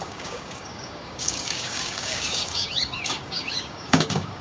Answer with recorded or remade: remade